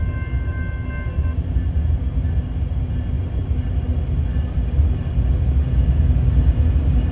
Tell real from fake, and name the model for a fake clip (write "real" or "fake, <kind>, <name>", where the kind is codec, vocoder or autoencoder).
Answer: real